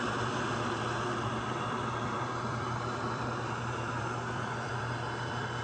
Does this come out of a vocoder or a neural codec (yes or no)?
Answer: yes